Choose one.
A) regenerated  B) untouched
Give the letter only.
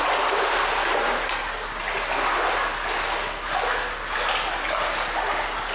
B